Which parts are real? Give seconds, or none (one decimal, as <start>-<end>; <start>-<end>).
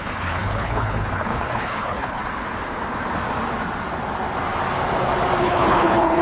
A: 2.2-5.4